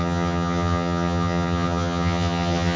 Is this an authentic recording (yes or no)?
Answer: no